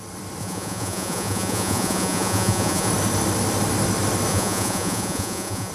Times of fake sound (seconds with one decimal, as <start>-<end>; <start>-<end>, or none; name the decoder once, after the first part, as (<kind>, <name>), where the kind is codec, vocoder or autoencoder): 0.4-2.9 (vocoder, Vocos); 4.3-5.7